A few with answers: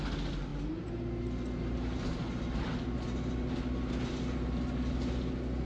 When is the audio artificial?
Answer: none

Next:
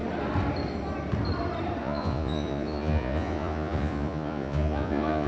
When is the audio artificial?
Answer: 1.8-5.3 (vocoder, Vocos)

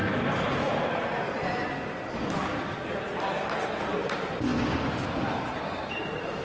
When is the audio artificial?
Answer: 3.8-6.4 (vocoder, BigVGAN v2)

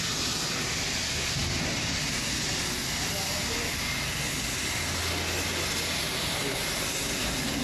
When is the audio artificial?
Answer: none

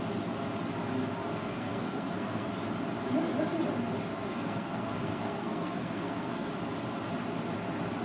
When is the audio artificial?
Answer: 1.3-2.5 (codec, SNAC); 4.1-6.5

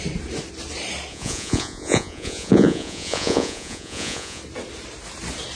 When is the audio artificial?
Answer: 1.1-4.4 (vocoder, Vocos)